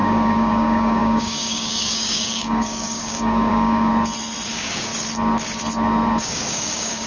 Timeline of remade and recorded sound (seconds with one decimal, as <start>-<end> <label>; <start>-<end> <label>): 0.0-3.9 remade; 3.9-4.5 recorded; 4.5-4.9 remade; 4.9-6.2 recorded; 6.2-7.1 remade